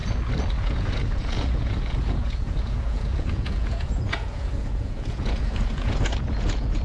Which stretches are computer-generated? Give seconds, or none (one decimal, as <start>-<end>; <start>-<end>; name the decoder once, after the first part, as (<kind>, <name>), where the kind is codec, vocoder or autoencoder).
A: 0.6-6.8 (vocoder, Vocos)